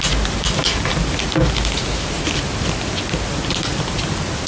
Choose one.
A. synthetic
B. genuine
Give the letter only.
B